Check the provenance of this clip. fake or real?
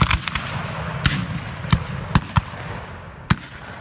real